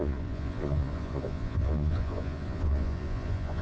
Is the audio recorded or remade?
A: remade